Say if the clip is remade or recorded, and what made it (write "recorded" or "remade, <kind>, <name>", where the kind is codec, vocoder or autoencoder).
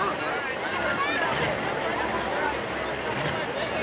recorded